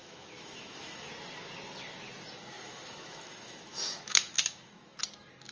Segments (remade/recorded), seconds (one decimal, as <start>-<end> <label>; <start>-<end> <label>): 0.0-1.1 remade; 1.1-2.6 recorded; 2.6-5.0 remade; 5.0-5.5 recorded